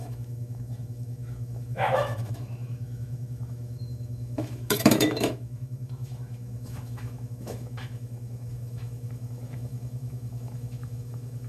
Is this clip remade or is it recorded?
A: remade